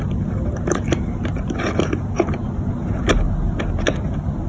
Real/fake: real